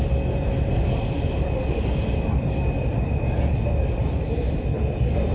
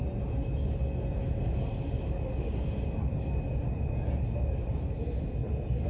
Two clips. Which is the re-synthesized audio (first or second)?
first